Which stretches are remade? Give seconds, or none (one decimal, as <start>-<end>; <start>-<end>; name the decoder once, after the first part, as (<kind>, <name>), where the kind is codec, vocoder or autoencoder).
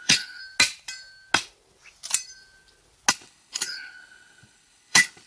0.0-0.4 (codec, HILCodec); 3.1-5.3